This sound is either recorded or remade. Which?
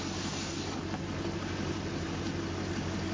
recorded